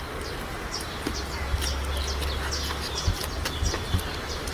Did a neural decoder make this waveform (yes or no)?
no